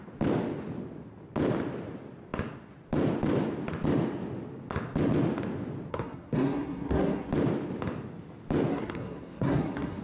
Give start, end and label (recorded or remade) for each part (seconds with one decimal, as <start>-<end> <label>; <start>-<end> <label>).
0.0-5.9 recorded; 5.9-7.3 remade; 7.3-8.7 recorded; 8.7-10.0 remade